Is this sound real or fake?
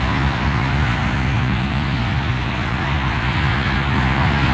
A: fake